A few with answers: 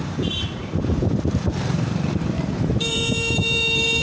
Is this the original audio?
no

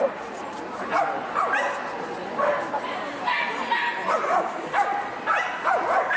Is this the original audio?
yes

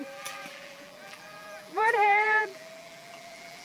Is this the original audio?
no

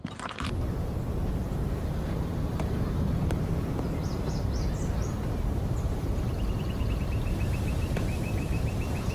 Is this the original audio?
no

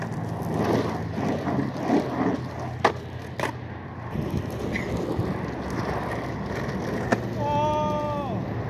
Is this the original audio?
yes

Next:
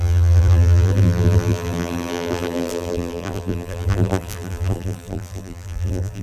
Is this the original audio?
no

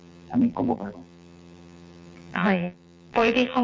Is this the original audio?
no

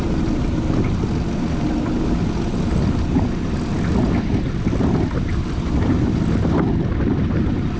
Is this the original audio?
yes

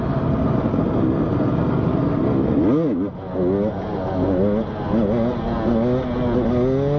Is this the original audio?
yes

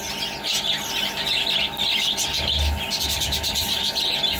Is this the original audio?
yes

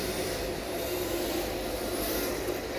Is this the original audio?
yes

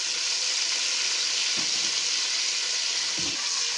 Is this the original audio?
yes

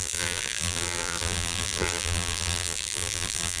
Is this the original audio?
no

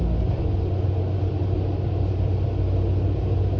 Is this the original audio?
yes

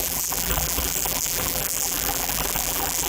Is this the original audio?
no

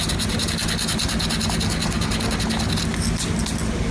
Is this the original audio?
yes